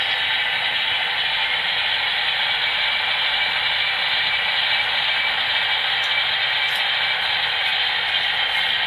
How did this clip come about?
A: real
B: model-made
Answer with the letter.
A